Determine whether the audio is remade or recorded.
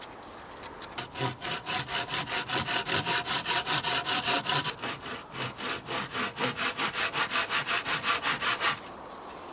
recorded